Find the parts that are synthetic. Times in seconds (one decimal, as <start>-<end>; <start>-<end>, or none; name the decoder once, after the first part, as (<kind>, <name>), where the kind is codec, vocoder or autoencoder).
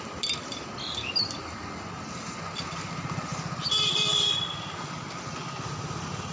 none